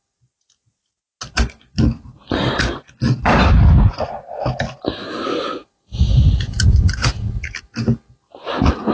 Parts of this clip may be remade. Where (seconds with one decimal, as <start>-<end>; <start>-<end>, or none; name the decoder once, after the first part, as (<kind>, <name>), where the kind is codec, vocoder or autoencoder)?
none